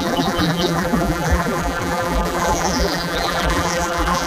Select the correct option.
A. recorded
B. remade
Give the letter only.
B